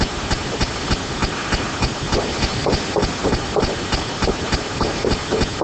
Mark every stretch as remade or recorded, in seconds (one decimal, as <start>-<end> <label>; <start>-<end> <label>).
0.0-5.6 recorded